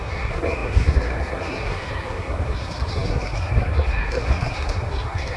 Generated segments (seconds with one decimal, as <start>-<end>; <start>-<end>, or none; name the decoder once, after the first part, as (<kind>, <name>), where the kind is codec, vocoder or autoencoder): 0.0-5.4 (codec, SNAC)